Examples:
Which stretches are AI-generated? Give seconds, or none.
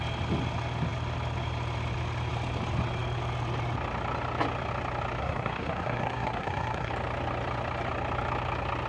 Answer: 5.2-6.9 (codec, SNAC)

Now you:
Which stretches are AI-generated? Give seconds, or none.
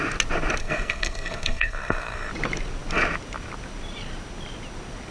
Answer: 0.6-2.3 (codec, SNAC)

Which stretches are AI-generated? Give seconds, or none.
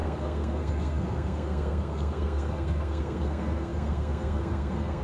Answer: 0.0-5.0 (codec, SNAC)